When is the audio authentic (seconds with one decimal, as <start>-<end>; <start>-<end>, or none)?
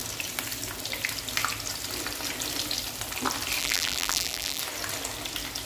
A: 0.0-3.6; 4.6-5.7